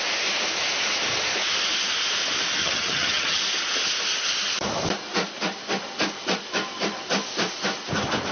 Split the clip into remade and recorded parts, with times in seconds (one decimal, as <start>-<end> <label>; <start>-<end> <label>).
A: 0.0-2.6 recorded; 2.6-3.4 remade; 3.4-8.3 recorded